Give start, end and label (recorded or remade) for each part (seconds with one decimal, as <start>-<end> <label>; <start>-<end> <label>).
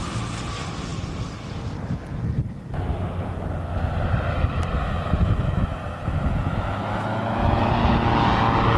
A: 0.0-4.8 recorded; 4.8-7.7 remade; 7.7-8.8 recorded